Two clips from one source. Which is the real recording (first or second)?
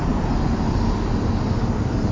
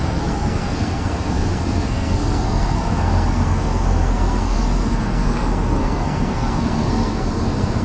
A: first